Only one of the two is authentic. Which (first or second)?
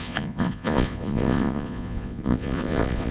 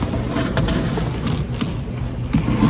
second